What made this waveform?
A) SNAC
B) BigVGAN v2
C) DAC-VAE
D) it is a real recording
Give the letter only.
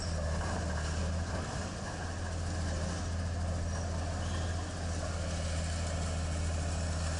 D